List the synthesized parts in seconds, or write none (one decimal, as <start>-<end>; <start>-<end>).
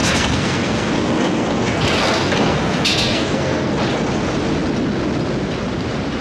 0.0-3.7